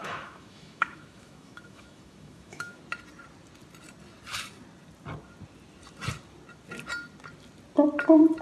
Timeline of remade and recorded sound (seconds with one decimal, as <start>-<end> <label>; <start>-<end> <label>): 0.0-2.8 remade; 2.8-8.4 recorded